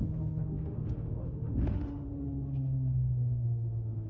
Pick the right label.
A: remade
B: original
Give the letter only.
A